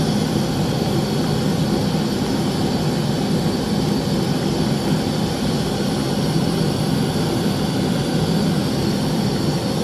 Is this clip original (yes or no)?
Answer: yes